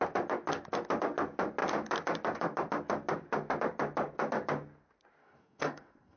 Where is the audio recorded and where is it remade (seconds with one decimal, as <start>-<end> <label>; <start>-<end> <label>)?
0.0-5.2 recorded; 5.2-6.2 remade

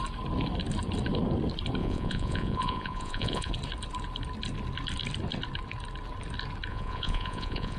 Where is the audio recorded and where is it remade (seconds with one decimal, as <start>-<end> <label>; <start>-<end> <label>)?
0.0-1.8 recorded; 1.8-3.5 remade; 3.5-6.7 recorded; 6.7-7.8 remade